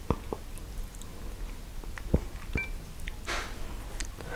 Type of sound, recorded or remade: recorded